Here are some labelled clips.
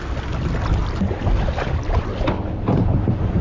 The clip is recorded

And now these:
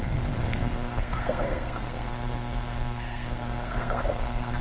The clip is remade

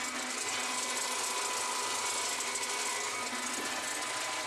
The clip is recorded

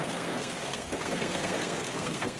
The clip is remade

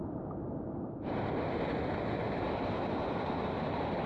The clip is recorded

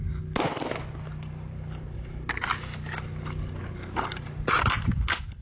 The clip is recorded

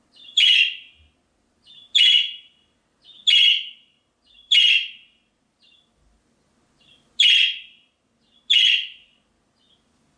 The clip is recorded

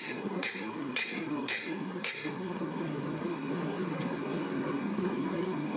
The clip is remade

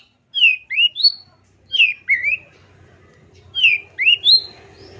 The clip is recorded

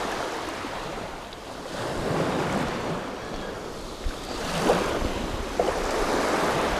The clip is recorded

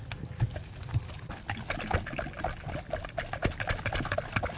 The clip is recorded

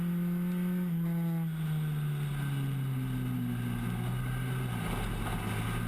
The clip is recorded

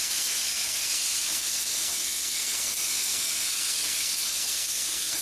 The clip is remade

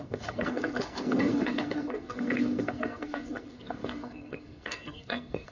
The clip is remade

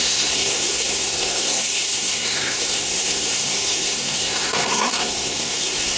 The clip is remade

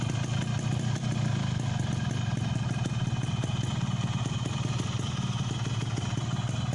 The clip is recorded